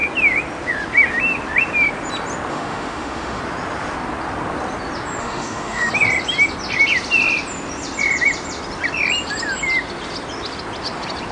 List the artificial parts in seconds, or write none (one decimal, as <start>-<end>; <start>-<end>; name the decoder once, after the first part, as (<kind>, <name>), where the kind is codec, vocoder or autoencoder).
2.5-3.4 (autoencoder, DAC-VAE); 5.2-5.9